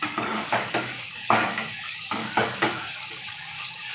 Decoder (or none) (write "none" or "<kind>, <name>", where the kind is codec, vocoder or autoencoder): codec, DAC